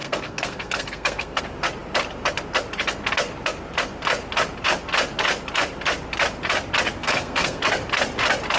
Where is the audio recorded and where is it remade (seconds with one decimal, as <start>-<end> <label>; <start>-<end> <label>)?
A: 0.0-1.4 remade; 1.4-7.0 recorded; 7.0-7.6 remade; 7.6-8.6 recorded